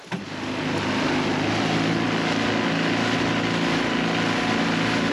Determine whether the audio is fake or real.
real